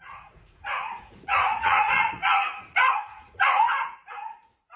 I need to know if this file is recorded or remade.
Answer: remade